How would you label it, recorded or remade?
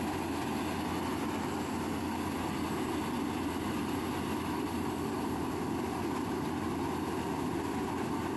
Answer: recorded